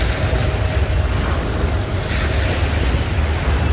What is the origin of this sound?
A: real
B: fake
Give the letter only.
A